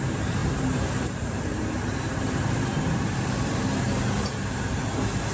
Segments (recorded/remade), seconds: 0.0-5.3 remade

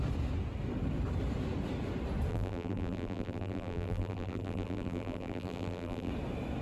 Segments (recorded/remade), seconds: 0.0-2.3 recorded; 2.3-6.1 remade; 6.1-6.6 recorded

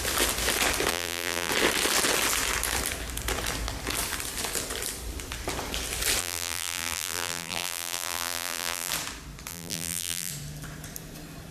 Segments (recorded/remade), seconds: 0.0-0.9 recorded; 0.9-1.5 remade; 1.5-6.2 recorded; 6.2-8.9 remade; 8.9-9.5 recorded; 9.5-10.3 remade; 10.3-11.5 recorded

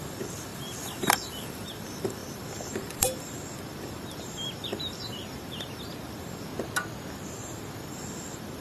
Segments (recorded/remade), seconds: 0.0-6.5 remade; 6.5-7.1 recorded; 7.1-8.6 remade